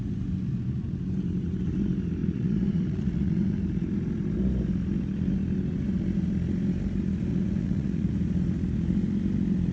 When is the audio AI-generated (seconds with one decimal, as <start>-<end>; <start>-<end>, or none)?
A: 2.2-3.6; 7.3-8.1

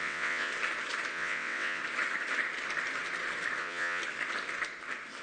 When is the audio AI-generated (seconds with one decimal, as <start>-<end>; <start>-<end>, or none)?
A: 0.0-0.5; 1.1-1.8; 3.6-4.0

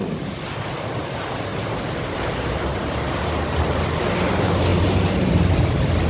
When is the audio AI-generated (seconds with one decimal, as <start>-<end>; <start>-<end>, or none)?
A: 1.5-3.4; 4.7-5.3

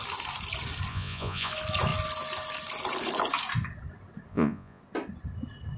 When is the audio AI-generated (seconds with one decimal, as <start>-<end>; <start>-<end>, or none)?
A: 0.9-1.5; 4.3-4.8

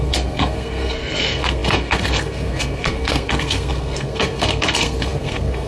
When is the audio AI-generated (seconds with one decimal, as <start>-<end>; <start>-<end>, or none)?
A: 0.0-5.7

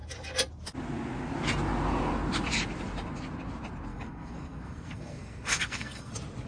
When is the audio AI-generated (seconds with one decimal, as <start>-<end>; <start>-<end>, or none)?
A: 3.9-6.1

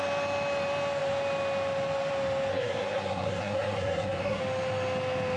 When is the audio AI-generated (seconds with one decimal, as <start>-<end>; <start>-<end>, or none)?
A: 2.5-4.4

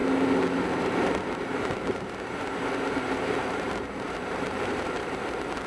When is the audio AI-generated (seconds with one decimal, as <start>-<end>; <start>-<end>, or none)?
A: 0.7-5.7